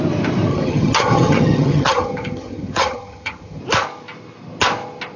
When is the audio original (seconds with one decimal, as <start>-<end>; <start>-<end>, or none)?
0.0-0.5; 3.6-5.2